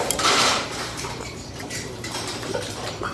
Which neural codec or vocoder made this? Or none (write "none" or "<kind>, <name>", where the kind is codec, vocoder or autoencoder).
vocoder, BigVGAN v2